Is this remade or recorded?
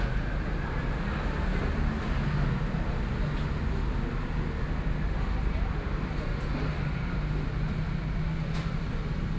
recorded